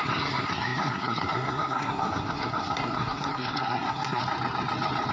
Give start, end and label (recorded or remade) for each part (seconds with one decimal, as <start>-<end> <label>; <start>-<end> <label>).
0.0-4.2 remade; 4.2-5.1 recorded